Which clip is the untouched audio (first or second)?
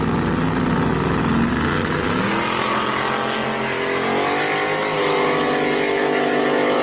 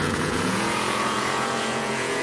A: first